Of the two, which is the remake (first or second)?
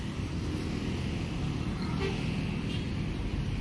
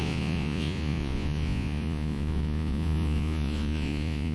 second